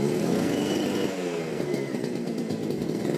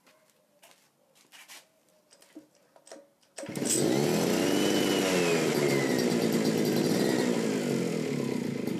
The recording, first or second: second